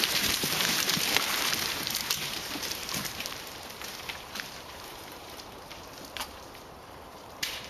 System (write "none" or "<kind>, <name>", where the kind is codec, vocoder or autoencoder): vocoder, BigVGAN v2